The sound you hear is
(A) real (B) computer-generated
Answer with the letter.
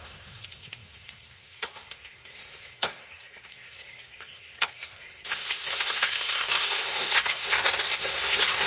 B